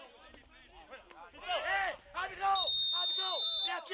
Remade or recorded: recorded